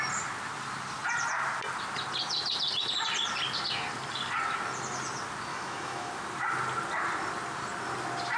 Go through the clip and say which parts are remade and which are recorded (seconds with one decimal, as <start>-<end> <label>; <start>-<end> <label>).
0.0-5.5 recorded; 5.5-6.1 remade; 6.1-8.4 recorded